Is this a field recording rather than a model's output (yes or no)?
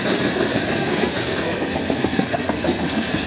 no